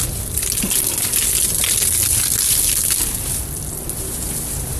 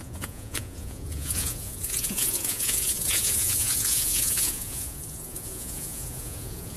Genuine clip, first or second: first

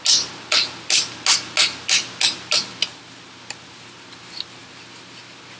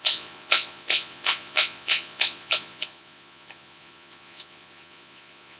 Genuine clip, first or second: first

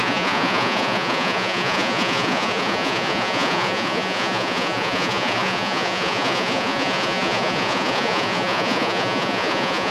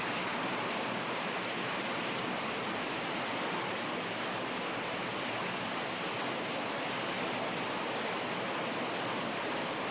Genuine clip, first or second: second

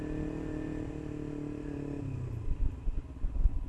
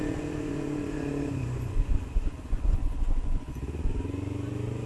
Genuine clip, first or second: first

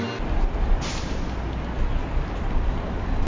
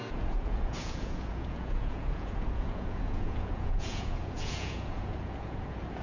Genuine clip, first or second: first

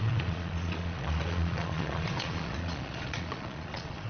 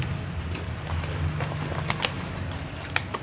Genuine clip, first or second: second